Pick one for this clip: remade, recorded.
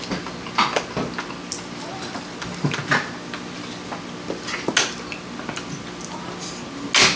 recorded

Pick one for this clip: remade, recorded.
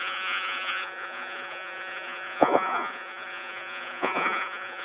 remade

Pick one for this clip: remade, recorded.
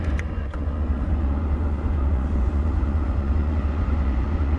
remade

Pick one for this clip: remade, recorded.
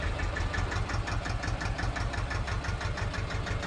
recorded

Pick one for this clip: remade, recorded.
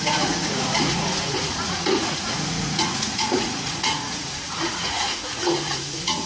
remade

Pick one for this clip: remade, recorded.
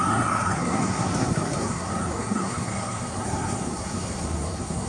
remade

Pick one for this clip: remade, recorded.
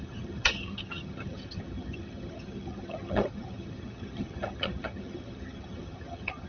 remade